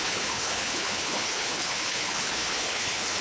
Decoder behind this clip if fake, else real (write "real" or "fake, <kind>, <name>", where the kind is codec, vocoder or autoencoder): fake, codec, HILCodec